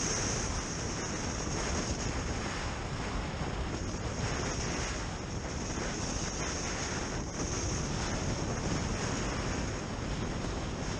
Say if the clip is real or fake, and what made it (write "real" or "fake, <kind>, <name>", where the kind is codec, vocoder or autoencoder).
real